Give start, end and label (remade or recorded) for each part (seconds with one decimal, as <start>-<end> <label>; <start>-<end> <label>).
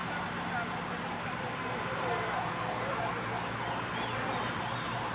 0.0-5.1 recorded